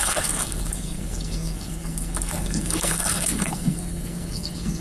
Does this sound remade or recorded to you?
remade